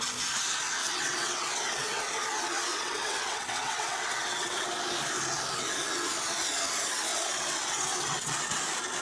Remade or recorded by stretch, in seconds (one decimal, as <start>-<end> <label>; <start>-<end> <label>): 0.0-0.8 recorded; 0.8-2.0 remade; 2.0-2.7 recorded; 2.7-4.8 remade; 4.8-7.1 recorded; 7.1-8.4 remade; 8.4-9.0 recorded